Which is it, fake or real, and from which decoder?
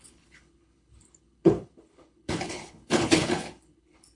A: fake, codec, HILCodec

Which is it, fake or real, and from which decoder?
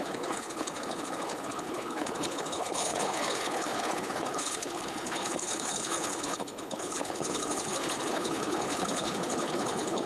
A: fake, codec, HILCodec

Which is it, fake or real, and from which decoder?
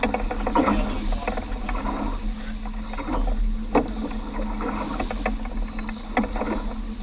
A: real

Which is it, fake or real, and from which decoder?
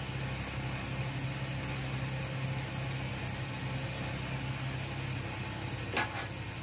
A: real